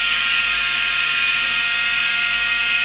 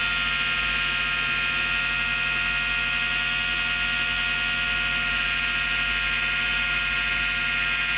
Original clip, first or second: second